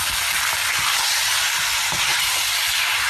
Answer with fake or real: real